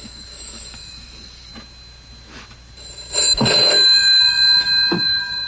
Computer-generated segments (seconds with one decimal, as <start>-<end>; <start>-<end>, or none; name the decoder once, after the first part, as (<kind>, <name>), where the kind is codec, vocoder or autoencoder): 0.0-1.5 (autoencoder, DAC-VAE); 3.7-4.2; 5.0-5.5